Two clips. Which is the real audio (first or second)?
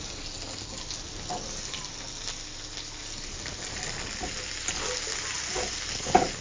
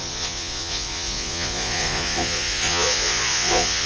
first